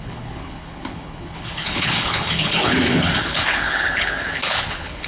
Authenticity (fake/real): fake